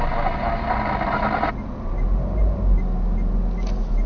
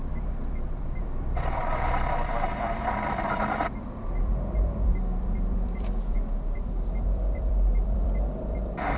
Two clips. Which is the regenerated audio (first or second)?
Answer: second